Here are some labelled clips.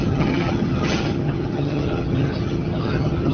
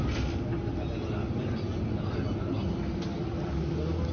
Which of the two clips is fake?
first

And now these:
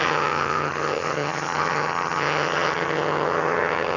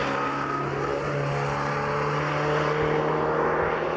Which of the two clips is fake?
first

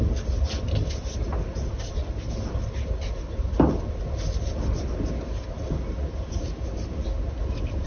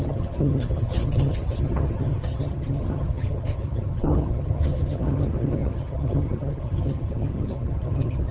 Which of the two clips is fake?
second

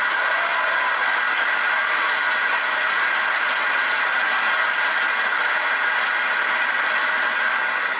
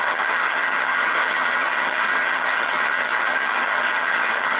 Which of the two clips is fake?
second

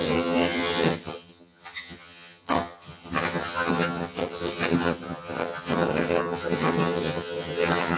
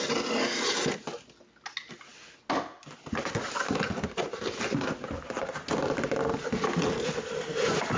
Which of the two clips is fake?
first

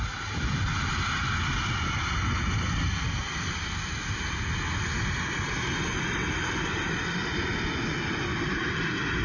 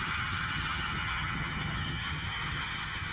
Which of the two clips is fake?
second